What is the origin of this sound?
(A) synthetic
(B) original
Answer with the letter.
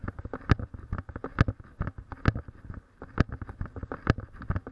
B